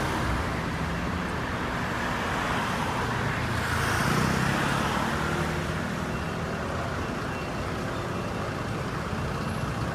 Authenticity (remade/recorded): recorded